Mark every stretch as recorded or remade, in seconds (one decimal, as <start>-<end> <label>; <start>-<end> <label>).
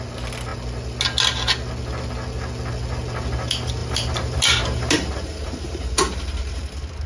0.0-3.8 recorded; 3.8-7.1 remade